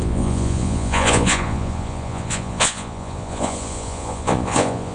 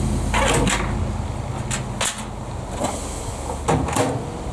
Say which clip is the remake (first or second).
first